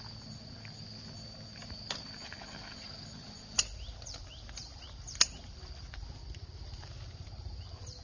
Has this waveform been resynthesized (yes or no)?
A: no